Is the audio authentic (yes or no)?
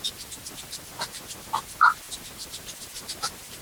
yes